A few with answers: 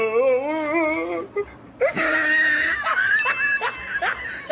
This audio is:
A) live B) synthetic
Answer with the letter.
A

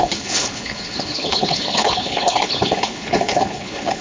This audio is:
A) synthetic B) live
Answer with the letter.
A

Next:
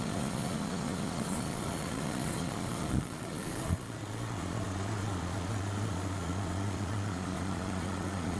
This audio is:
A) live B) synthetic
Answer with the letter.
B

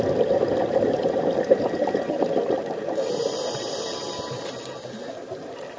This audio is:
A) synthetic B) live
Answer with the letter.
B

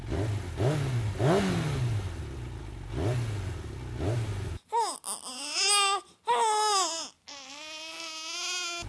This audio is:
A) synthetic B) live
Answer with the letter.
B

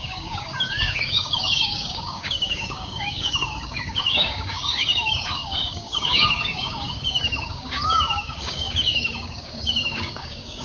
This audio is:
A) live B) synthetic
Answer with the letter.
B